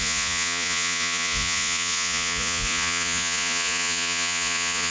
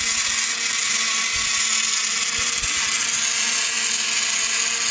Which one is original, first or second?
second